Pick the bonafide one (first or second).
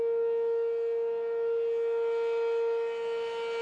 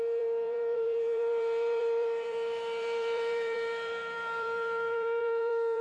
first